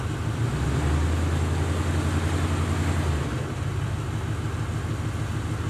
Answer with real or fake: real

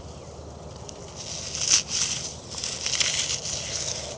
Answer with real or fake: real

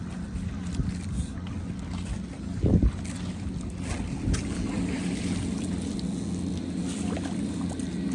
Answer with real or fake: real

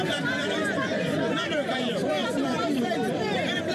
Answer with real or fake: fake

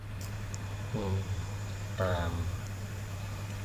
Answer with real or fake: fake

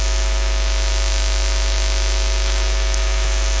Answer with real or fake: real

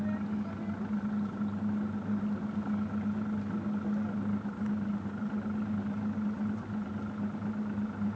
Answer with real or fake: real